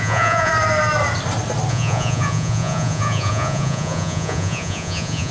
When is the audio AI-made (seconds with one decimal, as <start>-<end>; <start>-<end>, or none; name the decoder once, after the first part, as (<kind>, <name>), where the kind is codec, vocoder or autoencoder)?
0.0-0.5 (vocoder, Vocos); 1.7-5.3